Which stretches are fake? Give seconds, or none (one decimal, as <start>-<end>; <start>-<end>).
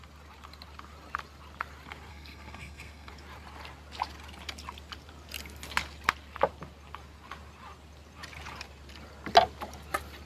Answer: 2.1-3.1